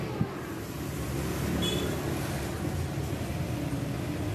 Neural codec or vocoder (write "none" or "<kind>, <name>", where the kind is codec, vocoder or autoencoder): none